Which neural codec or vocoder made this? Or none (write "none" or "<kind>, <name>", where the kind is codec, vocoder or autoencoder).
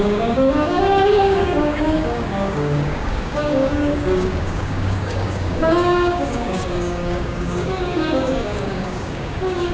codec, DAC